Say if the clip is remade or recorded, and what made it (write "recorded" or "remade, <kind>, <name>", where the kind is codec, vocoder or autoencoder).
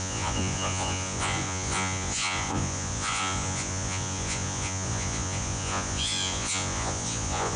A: remade, vocoder, Vocos